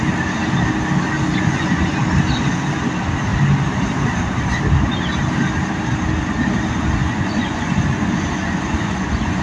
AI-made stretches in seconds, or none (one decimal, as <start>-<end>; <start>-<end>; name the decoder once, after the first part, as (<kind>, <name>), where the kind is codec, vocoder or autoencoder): 1.3-2.0 (vocoder, Vocos); 7.0-9.4